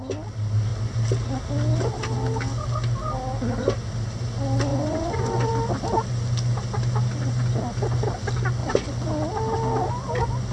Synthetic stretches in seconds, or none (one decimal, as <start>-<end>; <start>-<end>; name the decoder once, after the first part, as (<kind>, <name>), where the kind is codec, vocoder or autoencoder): 4.7-5.5 (vocoder, Vocos); 8.6-9.1